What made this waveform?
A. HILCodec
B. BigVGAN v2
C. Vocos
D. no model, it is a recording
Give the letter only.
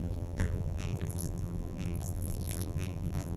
B